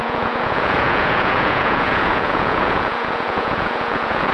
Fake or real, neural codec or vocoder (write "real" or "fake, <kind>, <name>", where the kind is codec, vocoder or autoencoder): fake, vocoder, Vocos